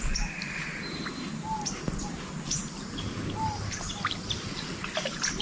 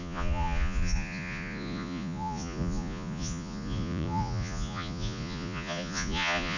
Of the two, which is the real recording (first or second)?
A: first